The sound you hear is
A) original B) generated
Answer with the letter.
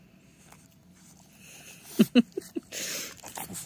A